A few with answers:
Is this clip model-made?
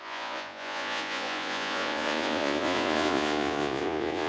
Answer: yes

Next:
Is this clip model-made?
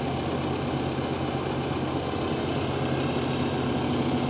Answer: no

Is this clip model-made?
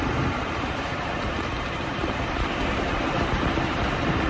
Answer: yes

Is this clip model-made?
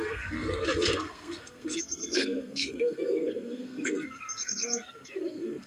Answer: yes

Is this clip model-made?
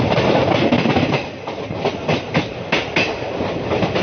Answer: no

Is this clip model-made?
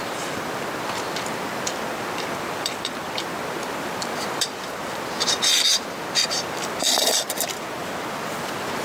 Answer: yes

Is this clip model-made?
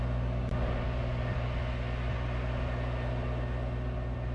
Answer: no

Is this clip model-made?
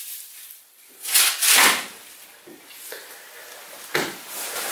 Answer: no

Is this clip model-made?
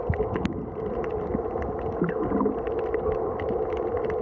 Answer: no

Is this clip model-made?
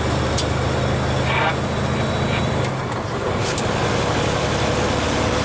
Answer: no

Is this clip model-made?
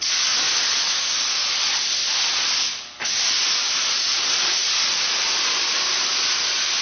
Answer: no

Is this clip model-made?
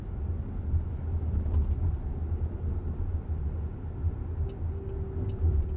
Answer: no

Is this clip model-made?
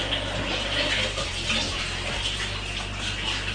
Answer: no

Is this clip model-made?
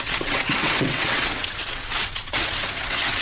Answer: yes